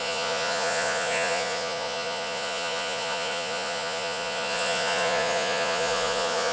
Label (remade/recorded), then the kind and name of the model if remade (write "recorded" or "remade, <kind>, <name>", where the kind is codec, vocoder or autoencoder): remade, vocoder, Vocos